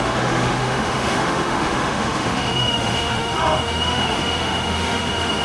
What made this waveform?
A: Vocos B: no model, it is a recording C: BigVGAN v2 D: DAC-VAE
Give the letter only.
D